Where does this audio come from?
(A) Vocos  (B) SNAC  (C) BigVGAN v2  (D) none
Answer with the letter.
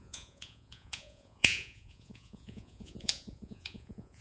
A